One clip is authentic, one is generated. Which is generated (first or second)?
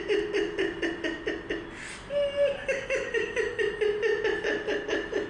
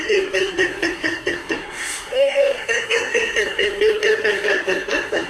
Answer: second